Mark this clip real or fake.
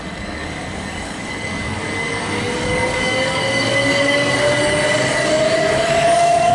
fake